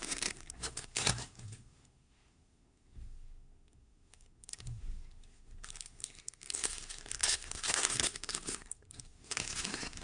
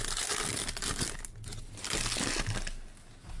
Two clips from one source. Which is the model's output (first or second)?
first